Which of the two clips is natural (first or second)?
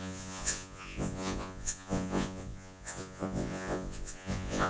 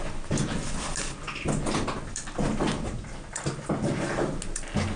second